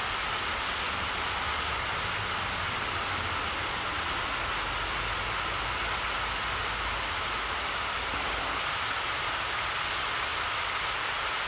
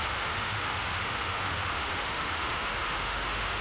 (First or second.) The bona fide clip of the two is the first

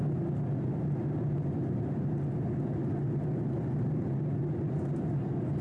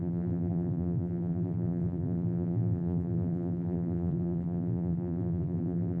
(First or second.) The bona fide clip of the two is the first